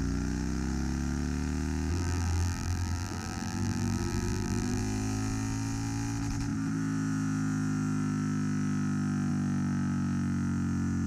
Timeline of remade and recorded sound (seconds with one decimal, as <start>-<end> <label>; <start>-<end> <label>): 0.0-1.9 recorded; 1.9-4.8 remade; 4.8-11.1 recorded